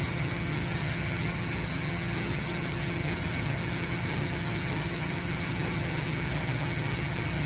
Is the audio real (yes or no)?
no